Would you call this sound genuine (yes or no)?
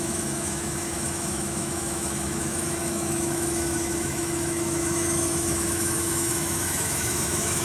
no